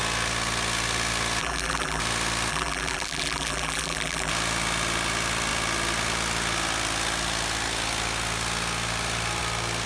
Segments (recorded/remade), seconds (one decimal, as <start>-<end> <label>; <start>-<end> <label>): 0.0-1.4 recorded; 1.4-2.0 remade; 2.0-2.5 recorded; 2.5-4.3 remade; 4.3-9.9 recorded